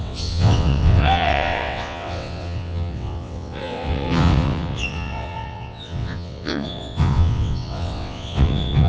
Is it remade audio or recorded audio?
remade